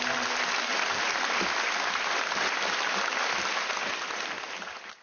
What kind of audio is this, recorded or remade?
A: recorded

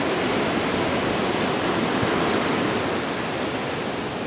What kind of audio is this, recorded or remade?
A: recorded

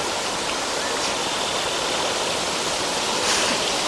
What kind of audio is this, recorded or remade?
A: recorded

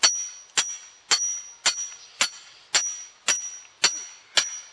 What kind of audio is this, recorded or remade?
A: recorded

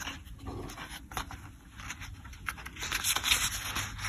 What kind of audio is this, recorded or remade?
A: recorded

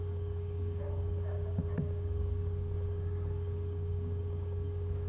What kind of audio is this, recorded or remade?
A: remade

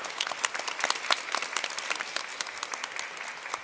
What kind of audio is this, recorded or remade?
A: recorded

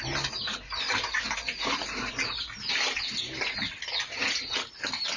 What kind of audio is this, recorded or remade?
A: recorded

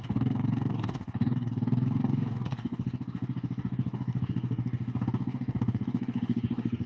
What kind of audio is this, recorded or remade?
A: remade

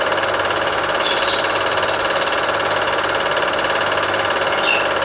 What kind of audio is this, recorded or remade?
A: recorded